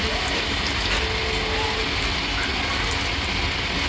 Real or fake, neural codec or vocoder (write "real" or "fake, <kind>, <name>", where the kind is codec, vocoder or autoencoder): real